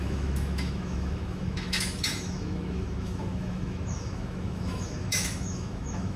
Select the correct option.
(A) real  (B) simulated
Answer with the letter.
B